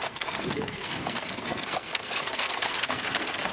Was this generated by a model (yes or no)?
yes